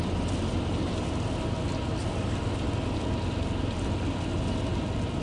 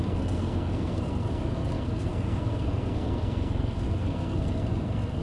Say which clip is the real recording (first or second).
first